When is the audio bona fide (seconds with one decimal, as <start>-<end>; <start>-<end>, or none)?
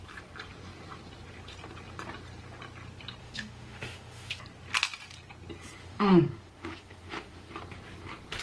0.0-3.2; 4.4-5.8; 7.5-8.4